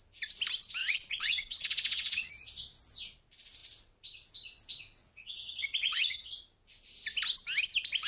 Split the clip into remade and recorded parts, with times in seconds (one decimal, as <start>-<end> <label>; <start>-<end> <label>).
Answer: 0.0-0.8 recorded; 0.8-2.3 remade; 2.3-5.0 recorded; 5.0-6.3 remade; 6.3-8.1 recorded